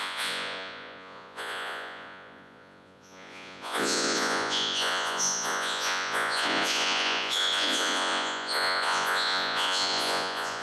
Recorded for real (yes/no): no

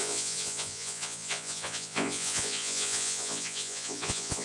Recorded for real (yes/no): no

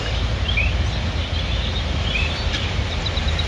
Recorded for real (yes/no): yes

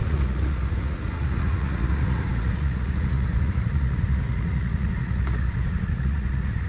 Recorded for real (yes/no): no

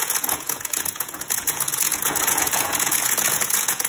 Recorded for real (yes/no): no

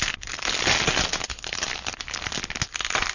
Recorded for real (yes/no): yes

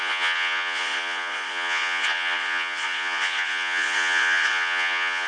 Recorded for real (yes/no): no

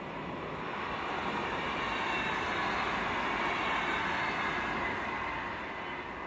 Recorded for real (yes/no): yes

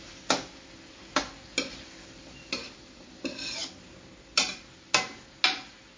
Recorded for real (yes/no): yes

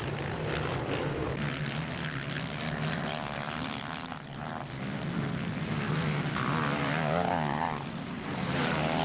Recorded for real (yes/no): yes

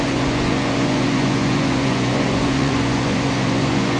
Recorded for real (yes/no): no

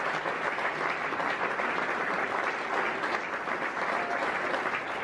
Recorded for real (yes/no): yes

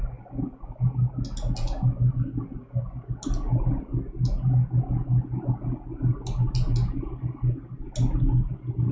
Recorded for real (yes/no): yes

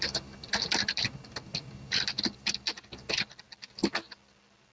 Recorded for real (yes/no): yes